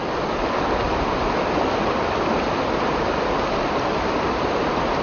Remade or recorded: recorded